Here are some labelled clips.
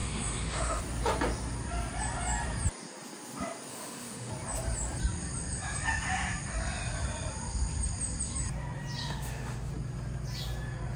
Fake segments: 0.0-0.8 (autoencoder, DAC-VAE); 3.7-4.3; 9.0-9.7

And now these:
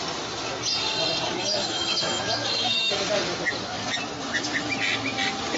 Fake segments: 1.4-3.1 (autoencoder, DAC-VAE)

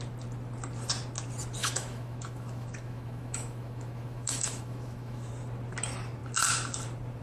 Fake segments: 1.6-5.3 (autoencoder, DAC-VAE)

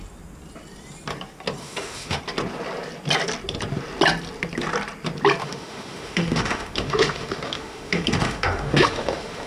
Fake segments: 1.6-2.2 (autoencoder, DAC-VAE); 5.4-9.5

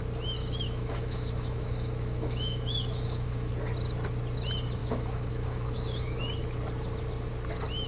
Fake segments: 0.4-3.5 (autoencoder, DAC-VAE); 4.8-6.2

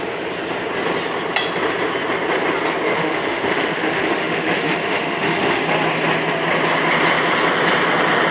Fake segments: 2.9-5.6 (autoencoder, DAC-VAE)

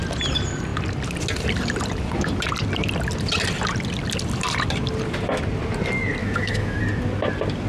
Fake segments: 6.2-6.8 (autoencoder, DAC-VAE)

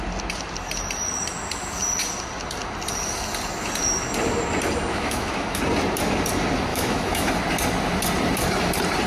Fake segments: 4.9-5.6 (autoencoder, DAC-VAE); 6.7-7.3